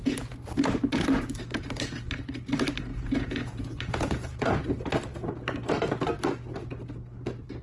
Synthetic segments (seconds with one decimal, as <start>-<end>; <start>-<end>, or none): 2.9-4.5